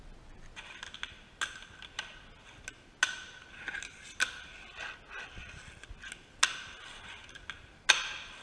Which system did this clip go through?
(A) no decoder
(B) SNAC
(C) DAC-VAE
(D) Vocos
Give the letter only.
A